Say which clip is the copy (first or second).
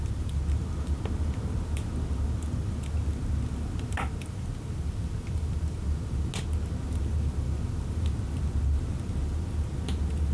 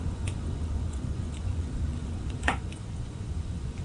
second